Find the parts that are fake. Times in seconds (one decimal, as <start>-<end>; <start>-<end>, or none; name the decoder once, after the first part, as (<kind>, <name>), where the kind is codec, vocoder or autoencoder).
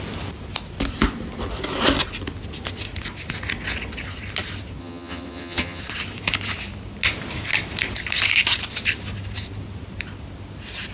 4.8-5.8 (vocoder, HiFi-GAN)